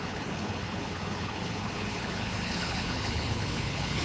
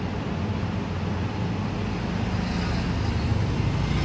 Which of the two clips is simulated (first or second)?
first